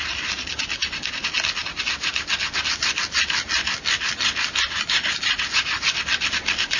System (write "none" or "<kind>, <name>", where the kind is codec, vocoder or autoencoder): none